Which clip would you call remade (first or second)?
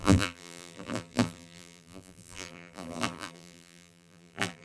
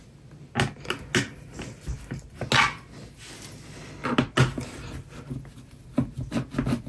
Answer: first